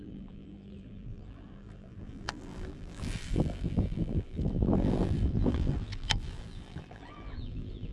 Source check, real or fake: fake